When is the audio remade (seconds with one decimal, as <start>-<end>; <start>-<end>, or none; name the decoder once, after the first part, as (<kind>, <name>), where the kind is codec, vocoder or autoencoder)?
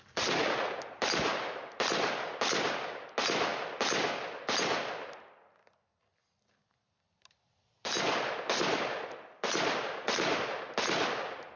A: none